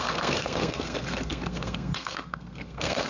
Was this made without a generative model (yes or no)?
no